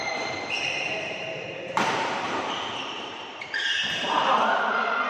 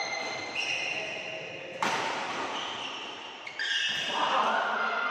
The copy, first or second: first